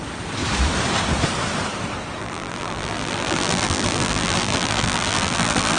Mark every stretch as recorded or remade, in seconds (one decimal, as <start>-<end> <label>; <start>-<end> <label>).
0.0-2.2 recorded; 2.2-5.8 remade